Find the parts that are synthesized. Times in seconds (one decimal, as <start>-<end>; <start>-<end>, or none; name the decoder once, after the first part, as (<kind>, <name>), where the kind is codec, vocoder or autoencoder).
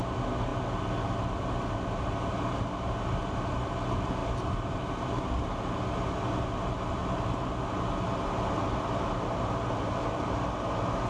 4.2-4.9 (vocoder, BigVGAN v2)